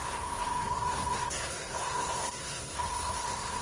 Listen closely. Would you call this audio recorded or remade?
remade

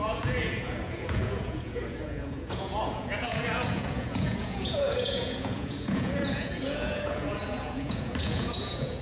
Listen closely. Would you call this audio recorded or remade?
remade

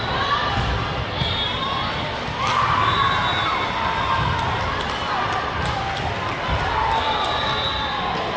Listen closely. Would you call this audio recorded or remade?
recorded